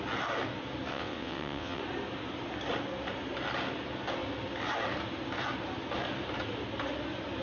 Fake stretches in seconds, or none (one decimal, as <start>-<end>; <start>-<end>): 0.9-1.8

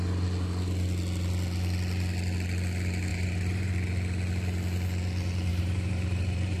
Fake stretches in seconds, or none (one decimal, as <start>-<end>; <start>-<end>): 3.1-3.7; 5.5-6.6